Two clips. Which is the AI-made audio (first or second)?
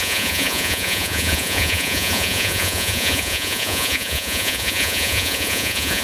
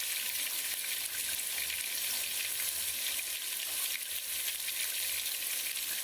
first